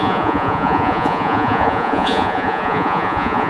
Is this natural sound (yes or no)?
no